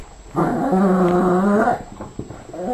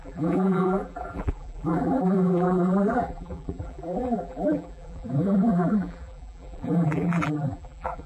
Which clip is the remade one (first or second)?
second